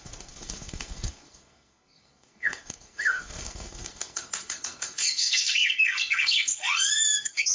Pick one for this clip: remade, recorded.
remade